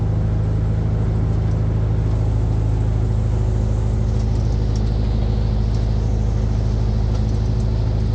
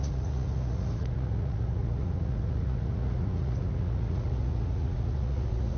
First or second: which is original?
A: first